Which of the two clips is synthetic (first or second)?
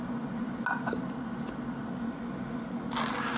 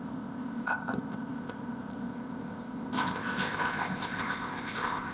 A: second